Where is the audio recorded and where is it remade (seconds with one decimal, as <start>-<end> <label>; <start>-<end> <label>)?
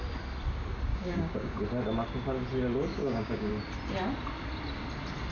0.0-0.9 recorded; 0.9-1.6 remade; 1.6-2.9 recorded; 2.9-3.5 remade; 3.5-5.3 recorded